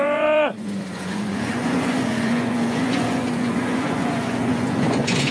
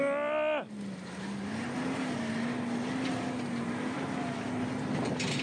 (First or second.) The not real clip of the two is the first